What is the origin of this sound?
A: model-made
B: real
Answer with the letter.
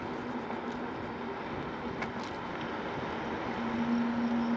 B